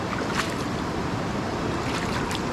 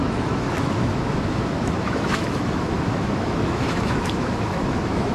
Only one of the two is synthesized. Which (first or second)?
second